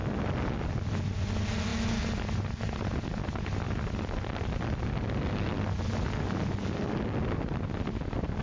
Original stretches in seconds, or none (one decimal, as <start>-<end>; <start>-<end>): 0.0-8.4